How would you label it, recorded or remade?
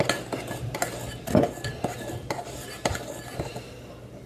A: recorded